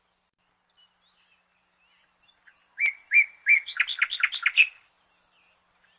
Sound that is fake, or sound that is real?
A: real